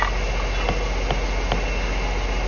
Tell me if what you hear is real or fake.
real